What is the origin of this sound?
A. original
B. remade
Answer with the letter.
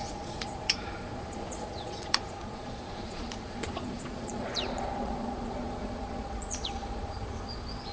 B